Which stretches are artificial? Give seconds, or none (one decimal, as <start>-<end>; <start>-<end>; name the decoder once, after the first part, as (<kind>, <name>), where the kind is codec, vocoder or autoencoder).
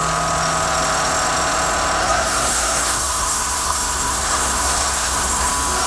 2.0-5.5 (codec, SNAC)